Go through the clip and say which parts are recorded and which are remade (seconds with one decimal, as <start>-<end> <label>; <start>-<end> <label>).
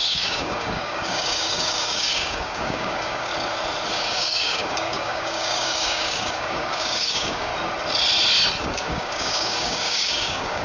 0.0-3.3 remade; 3.3-3.9 recorded; 3.9-7.5 remade; 7.5-8.6 recorded; 8.6-10.6 remade